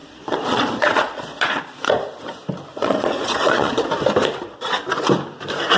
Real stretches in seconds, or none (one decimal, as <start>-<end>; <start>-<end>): 1.6-2.7; 3.9-5.8